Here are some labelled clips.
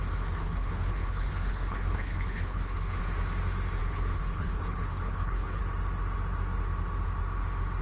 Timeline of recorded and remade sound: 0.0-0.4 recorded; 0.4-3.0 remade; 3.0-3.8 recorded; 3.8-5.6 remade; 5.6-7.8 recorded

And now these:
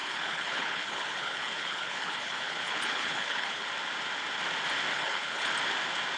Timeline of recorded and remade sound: 0.0-3.7 remade; 3.7-4.9 recorded; 4.9-5.5 remade; 5.5-6.2 recorded

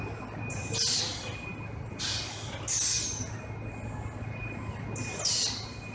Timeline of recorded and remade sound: 0.0-5.9 recorded

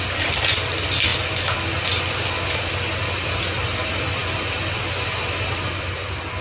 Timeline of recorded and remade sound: 0.0-6.4 recorded